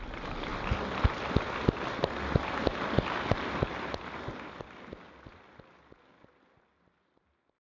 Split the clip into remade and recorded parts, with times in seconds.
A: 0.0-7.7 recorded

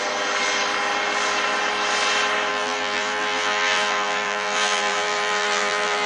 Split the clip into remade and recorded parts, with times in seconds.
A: 0.0-2.5 recorded; 2.5-6.1 remade